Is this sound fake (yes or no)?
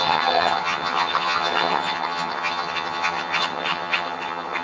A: yes